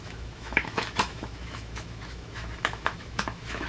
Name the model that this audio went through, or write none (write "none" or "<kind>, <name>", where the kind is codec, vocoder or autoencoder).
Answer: autoencoder, DAC-VAE